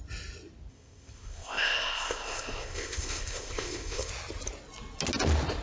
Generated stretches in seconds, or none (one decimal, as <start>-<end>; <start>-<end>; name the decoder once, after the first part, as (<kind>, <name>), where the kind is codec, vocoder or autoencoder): 0.7-4.1 (codec, ZipCodec)